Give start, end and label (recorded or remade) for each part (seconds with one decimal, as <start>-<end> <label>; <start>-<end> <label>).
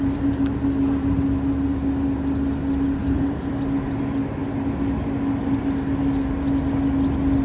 0.0-3.0 recorded; 3.0-3.5 remade; 3.5-7.4 recorded